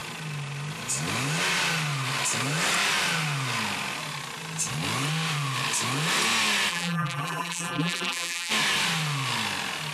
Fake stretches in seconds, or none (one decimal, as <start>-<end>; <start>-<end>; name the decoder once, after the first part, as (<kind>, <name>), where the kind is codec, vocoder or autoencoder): 6.7-8.5 (vocoder, BigVGAN v2)

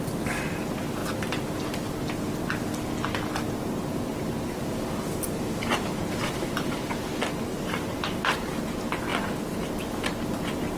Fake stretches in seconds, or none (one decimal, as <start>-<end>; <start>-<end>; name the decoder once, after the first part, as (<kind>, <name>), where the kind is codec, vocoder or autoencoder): 4.1-7.0 (vocoder, BigVGAN v2); 7.5-8.6

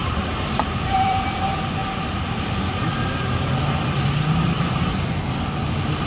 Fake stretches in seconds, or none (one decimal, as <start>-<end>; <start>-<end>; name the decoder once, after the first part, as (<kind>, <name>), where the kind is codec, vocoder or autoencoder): 0.0-1.3 (vocoder, BigVGAN v2)

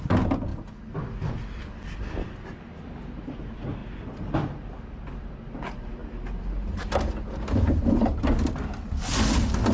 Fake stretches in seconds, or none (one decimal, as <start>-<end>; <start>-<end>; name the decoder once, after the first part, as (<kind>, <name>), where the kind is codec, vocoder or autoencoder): none